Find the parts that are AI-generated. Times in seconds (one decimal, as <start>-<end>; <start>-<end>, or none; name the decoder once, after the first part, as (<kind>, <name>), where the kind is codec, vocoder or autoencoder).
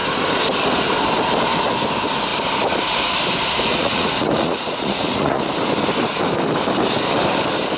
3.7-5.4 (vocoder, Vocos)